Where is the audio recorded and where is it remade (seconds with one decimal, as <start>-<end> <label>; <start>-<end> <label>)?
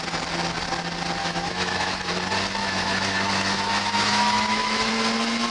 0.0-1.2 recorded; 1.2-2.1 remade; 2.1-2.6 recorded; 2.6-4.9 remade; 4.9-5.5 recorded